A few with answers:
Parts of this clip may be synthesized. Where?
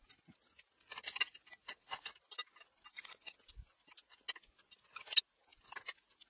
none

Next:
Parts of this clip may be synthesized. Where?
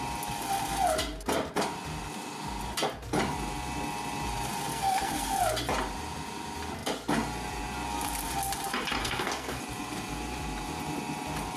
4.7-5.4 (codec, SNAC); 9.0-9.6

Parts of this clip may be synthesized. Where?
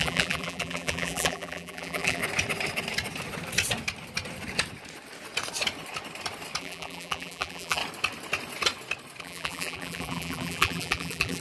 0.0-2.2 (vocoder, BigVGAN v2); 6.6-7.8; 9.2-11.4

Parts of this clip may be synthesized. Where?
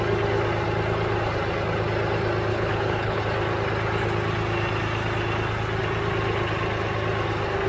2.5-3.2 (codec, HILCodec)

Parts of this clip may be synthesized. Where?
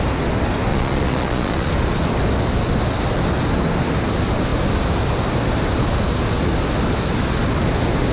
0.7-1.7 (vocoder, Vocos)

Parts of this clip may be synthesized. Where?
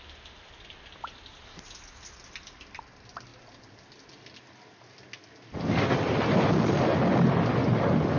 none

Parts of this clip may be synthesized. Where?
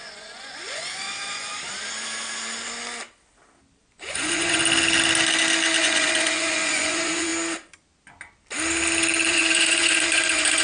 0.0-1.5 (vocoder, Vocos); 3.8-4.6; 5.8-7.3; 9.3-10.6